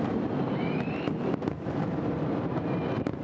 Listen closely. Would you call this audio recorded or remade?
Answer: recorded